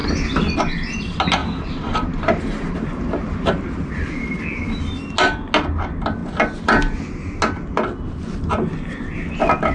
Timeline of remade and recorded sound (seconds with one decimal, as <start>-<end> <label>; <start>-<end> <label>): 0.0-1.4 recorded; 1.4-4.6 remade; 4.6-9.7 recorded